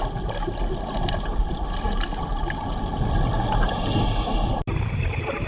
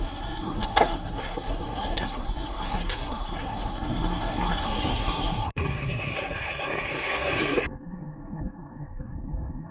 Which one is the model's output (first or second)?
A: second